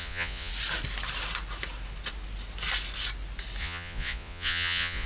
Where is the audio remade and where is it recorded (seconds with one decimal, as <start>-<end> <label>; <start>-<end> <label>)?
0.0-0.5 remade; 0.5-3.6 recorded; 3.6-5.1 remade